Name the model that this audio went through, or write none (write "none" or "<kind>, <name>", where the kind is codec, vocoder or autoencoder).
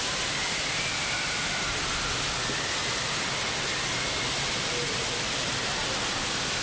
none